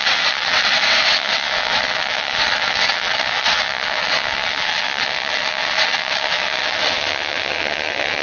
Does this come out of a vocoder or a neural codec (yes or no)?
yes